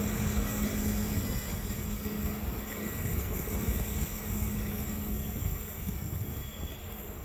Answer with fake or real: fake